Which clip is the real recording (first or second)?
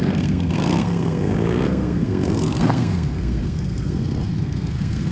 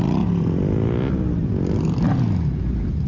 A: second